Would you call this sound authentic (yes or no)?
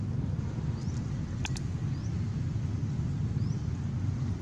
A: yes